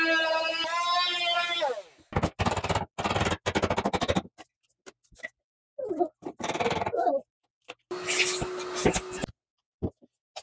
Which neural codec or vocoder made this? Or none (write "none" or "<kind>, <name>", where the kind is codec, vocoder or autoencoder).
none